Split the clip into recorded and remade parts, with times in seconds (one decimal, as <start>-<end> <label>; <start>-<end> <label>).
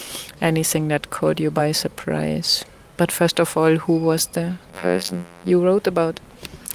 0.0-4.7 recorded; 4.7-5.5 remade; 5.5-6.7 recorded